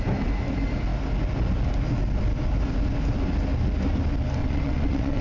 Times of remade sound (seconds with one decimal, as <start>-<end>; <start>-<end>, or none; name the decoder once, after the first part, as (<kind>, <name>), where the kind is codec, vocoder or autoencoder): 4.4-5.2 (vocoder, WaveNeXt)